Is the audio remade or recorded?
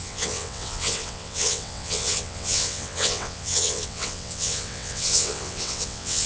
remade